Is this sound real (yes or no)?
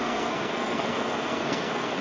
no